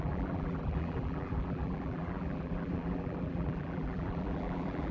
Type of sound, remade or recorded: remade